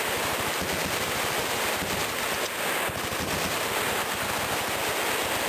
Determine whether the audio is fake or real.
real